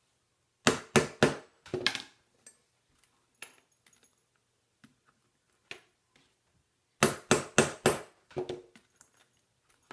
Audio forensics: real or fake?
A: real